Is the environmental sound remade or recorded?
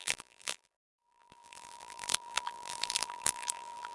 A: remade